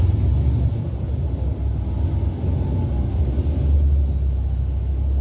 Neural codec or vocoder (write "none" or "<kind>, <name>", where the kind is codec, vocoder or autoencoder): none